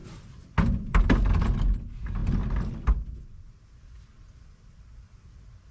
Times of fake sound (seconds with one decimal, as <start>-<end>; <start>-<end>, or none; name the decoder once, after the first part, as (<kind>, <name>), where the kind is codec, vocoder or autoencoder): none